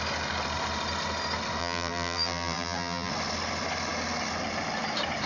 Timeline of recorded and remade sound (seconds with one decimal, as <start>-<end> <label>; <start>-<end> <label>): 0.0-1.6 recorded; 1.6-3.1 remade; 3.1-5.3 recorded